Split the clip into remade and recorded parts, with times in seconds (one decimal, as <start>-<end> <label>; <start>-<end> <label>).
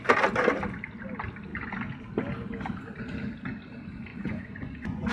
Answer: 0.0-4.1 recorded; 4.1-5.1 remade